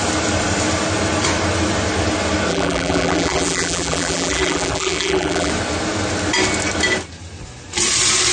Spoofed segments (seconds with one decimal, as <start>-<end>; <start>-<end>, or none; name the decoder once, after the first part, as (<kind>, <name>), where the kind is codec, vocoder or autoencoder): 2.5-5.5 (vocoder, BigVGAN v2)